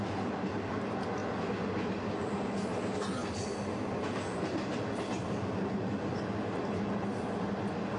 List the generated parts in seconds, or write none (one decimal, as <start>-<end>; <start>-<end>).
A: none